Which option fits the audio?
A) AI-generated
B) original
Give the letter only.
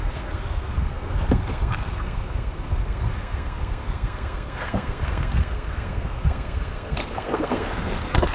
A